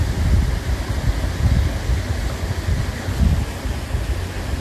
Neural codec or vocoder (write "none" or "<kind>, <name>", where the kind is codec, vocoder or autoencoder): none